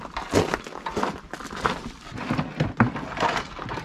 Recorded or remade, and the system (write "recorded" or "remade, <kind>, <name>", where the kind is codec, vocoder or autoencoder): recorded